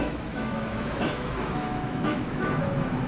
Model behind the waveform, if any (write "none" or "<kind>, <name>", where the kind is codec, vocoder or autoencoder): autoencoder, DAC-VAE